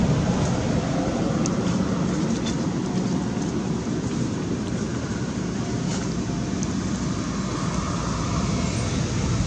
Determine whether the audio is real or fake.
real